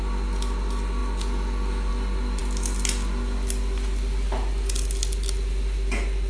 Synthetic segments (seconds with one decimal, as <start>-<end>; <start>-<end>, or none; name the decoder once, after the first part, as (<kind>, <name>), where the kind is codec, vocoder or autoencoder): none